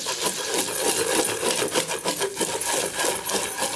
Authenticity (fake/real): real